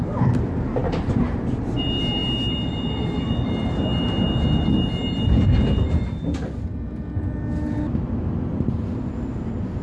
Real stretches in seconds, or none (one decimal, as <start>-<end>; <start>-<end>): 0.0-9.8

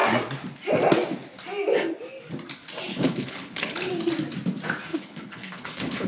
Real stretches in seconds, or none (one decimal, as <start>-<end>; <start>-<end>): 0.0-2.9; 3.9-4.9

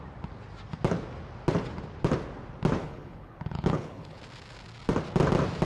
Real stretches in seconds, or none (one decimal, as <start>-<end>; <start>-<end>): 0.0-2.8; 4.2-5.6